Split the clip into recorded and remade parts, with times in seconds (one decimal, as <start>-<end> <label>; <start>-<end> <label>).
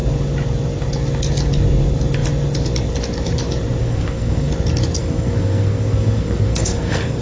0.0-3.8 recorded; 3.8-4.5 remade; 4.5-5.0 recorded; 5.0-7.2 remade